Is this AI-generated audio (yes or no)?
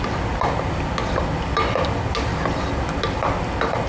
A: no